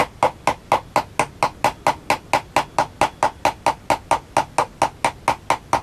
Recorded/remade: recorded